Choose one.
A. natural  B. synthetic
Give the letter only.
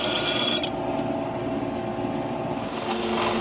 A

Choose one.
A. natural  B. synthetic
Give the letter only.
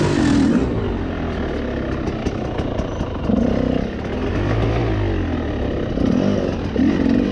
A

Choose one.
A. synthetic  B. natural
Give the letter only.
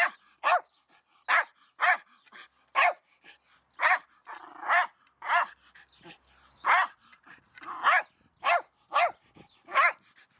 B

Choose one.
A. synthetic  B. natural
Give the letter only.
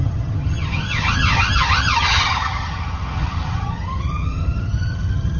A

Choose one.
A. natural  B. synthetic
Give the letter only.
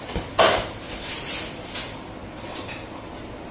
A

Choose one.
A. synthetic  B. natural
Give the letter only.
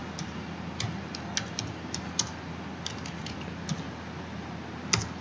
B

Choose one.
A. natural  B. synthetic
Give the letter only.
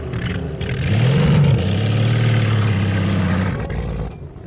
A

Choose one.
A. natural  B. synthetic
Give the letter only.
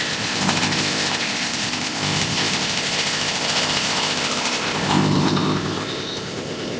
B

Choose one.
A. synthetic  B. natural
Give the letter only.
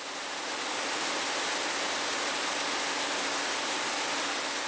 B